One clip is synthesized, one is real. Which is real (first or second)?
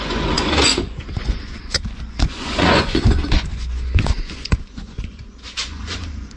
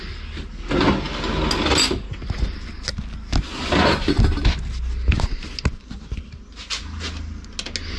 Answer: second